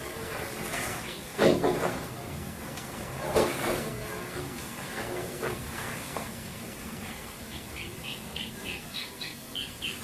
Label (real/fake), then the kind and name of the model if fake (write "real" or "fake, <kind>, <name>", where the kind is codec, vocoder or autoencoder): fake, codec, SNAC